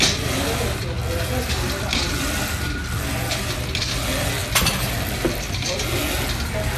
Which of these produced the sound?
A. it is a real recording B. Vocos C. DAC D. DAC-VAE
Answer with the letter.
A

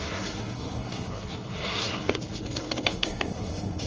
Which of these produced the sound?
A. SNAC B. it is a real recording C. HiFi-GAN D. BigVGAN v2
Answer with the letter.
A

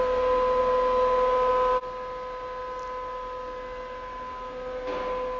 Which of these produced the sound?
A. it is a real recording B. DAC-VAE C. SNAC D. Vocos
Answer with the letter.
A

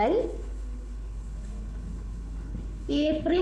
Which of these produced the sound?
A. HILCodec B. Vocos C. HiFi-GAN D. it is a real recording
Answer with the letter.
A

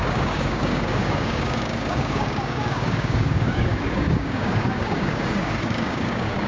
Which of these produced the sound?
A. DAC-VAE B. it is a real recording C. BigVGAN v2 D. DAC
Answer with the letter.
D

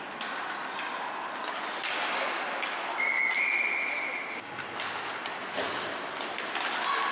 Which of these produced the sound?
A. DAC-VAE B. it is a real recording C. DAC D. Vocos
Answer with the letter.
B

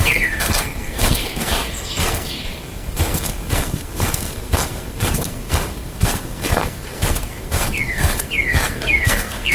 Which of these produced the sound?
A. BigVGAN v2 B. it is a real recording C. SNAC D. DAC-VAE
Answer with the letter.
C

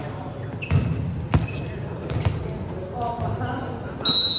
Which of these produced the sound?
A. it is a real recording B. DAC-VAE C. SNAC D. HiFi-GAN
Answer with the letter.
A